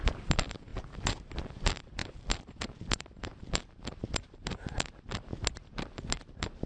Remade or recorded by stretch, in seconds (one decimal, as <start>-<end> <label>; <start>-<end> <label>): 0.0-5.3 remade; 5.3-6.3 recorded; 6.3-6.7 remade